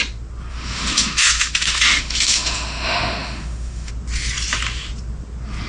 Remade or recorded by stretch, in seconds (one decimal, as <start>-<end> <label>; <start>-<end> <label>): 0.0-0.5 recorded; 0.5-3.9 remade; 3.9-5.7 recorded